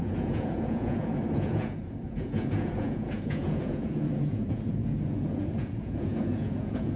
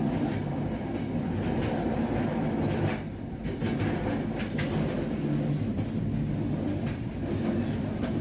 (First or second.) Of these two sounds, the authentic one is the second